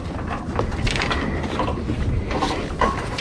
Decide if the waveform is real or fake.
real